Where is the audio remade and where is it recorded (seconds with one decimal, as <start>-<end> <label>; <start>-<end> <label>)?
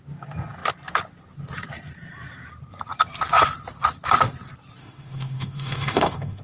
0.0-4.8 recorded; 4.8-6.4 remade